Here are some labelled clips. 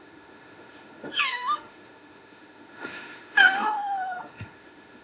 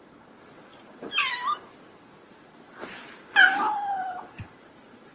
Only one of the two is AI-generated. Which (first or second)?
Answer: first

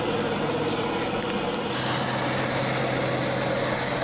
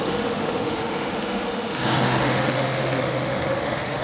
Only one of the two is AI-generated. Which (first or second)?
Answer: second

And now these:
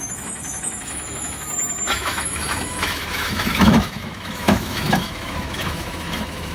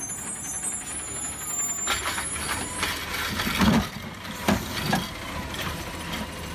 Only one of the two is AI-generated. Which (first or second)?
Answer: first